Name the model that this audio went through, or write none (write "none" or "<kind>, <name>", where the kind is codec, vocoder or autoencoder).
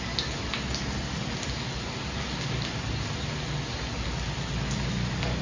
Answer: none